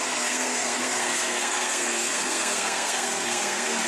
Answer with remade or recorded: remade